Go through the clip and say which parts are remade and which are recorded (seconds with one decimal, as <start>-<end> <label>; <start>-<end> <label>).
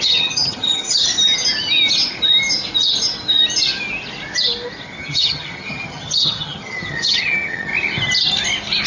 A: 0.0-1.1 remade; 1.1-5.0 recorded; 5.0-7.7 remade; 7.7-8.9 recorded